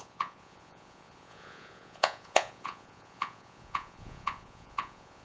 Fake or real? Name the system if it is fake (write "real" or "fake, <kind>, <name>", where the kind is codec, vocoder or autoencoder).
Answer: fake, vocoder, Vocos